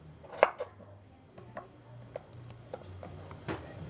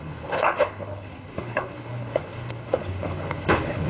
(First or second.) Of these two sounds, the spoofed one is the second